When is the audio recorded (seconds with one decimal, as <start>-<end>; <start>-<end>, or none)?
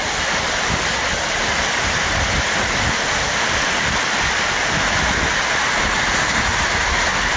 0.0-7.4